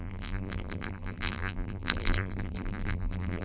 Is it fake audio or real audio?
fake